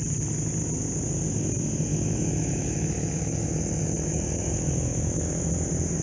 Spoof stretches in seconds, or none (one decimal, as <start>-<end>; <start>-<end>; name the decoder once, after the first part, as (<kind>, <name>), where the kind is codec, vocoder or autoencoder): 1.9-5.5 (autoencoder, DAC-VAE)